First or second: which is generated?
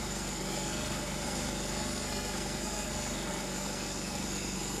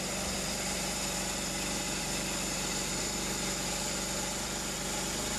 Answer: first